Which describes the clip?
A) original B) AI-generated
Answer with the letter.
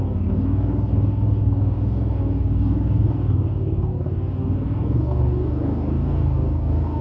B